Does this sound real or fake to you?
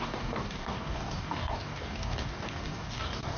fake